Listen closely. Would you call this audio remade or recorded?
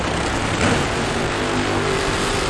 recorded